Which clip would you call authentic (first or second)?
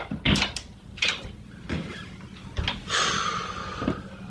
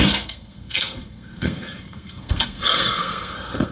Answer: first